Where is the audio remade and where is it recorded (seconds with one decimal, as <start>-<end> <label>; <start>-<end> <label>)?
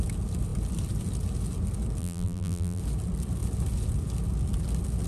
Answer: 0.0-2.0 recorded; 2.0-2.8 remade; 2.8-5.1 recorded